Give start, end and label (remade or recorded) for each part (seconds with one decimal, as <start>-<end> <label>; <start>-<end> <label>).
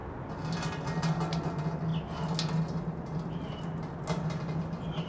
0.0-5.1 recorded